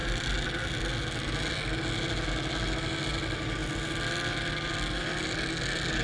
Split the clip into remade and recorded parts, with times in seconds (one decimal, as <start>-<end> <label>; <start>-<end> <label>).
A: 0.0-6.0 recorded